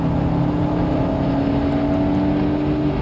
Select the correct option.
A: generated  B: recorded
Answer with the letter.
B